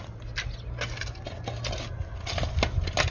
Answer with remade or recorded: recorded